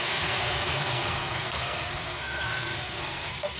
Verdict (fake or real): fake